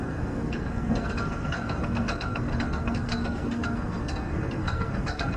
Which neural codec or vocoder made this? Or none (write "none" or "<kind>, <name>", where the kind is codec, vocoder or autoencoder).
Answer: codec, SNAC